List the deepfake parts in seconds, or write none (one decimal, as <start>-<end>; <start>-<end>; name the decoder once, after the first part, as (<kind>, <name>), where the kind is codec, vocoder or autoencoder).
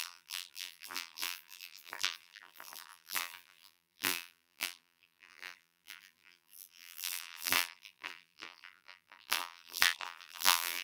0.0-10.8 (vocoder, BigVGAN v2)